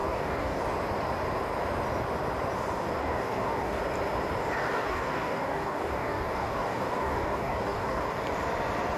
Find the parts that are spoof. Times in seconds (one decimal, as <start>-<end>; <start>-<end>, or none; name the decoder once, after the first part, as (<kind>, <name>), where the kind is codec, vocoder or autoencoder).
0.0-0.6 (codec, DAC); 3.0-3.8; 4.6-8.0